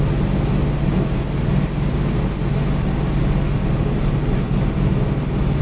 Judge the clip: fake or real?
real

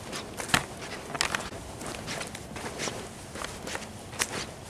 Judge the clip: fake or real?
real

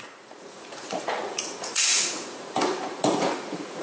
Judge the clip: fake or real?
fake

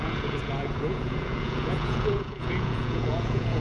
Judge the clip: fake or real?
fake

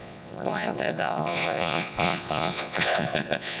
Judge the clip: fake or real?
fake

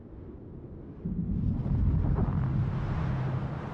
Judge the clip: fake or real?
real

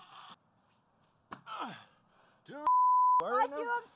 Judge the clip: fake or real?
real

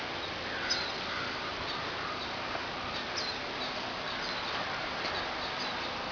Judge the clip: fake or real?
real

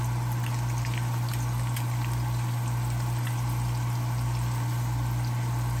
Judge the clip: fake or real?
real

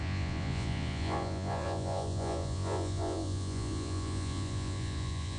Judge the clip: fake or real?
fake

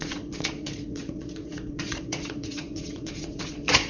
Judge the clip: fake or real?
fake